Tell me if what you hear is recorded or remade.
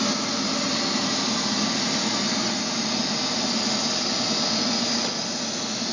recorded